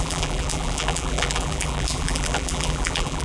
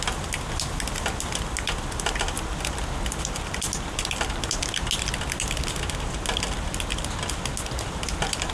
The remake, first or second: first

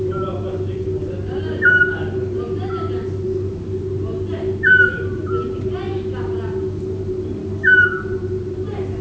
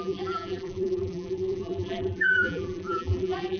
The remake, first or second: second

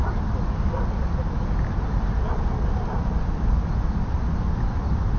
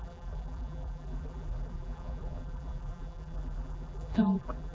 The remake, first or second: second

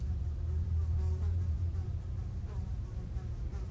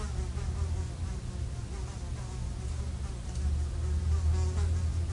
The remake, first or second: first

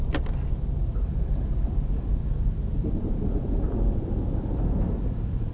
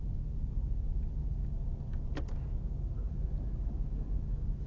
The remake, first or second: first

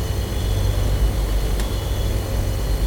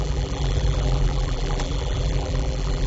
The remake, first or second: second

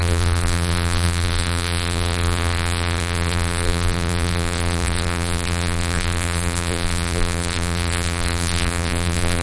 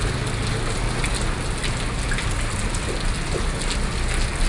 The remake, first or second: first